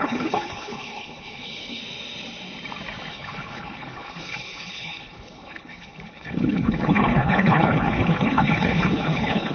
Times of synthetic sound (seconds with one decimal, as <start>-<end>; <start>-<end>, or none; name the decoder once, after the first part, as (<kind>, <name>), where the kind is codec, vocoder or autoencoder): 0.0-1.8 (codec, HILCodec); 3.1-9.5